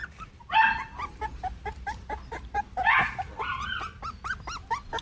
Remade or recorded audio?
recorded